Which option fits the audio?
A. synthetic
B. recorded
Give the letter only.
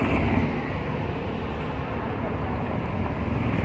B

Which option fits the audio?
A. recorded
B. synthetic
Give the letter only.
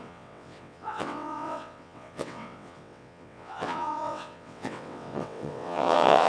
B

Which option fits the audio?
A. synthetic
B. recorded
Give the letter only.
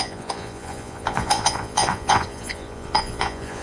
A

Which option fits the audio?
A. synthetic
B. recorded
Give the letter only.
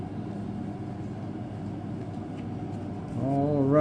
B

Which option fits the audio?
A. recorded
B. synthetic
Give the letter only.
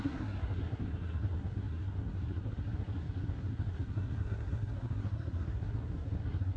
B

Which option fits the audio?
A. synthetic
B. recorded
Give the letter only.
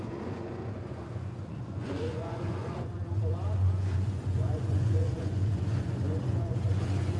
A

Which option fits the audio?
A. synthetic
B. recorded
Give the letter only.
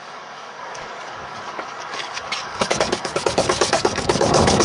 A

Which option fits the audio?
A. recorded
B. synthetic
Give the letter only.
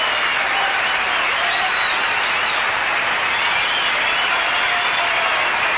A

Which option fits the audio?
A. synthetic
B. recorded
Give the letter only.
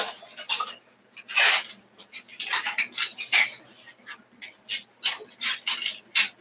B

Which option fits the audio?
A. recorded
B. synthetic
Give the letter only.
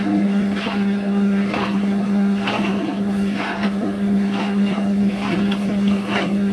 B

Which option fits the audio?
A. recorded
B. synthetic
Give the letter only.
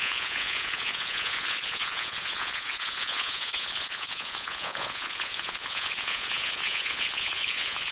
B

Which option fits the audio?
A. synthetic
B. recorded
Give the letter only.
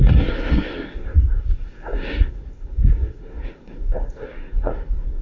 A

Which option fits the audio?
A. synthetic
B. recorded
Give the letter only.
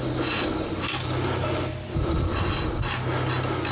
B